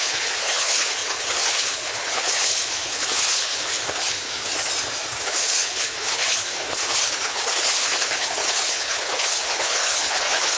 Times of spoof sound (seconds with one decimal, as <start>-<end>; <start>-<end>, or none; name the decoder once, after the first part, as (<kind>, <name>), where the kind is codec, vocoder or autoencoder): 0.0-4.5 (codec, HILCodec); 5.1-10.6

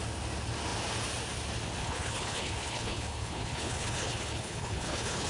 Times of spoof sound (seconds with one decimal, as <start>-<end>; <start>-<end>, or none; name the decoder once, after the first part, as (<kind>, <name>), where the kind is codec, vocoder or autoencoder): 1.8-5.3 (codec, HILCodec)